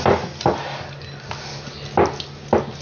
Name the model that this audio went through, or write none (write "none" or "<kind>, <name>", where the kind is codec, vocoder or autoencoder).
none